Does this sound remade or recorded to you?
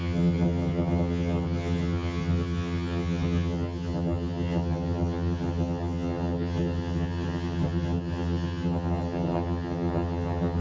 remade